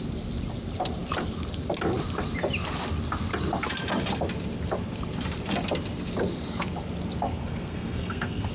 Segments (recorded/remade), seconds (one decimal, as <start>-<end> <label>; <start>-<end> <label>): 0.0-7.4 recorded; 7.4-8.5 remade